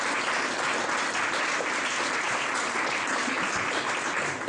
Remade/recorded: recorded